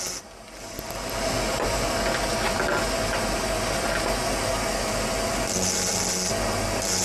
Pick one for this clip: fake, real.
real